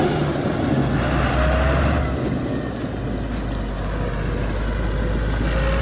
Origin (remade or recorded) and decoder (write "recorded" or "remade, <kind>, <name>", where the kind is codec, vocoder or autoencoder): recorded